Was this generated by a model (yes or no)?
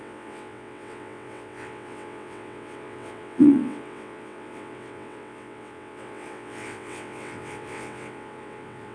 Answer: yes